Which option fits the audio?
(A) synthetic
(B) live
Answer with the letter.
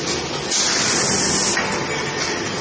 B